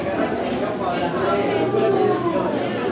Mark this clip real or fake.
real